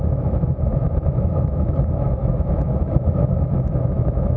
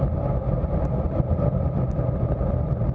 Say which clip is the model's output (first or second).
first